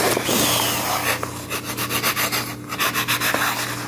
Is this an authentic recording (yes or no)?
yes